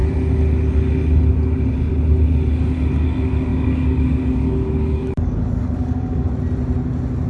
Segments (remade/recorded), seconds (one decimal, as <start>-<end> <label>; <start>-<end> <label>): 0.0-3.5 recorded; 3.5-6.3 remade; 6.3-7.3 recorded